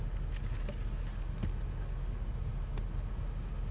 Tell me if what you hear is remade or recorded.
recorded